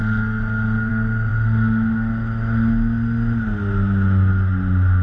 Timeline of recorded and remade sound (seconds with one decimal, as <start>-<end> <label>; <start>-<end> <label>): 0.0-5.0 recorded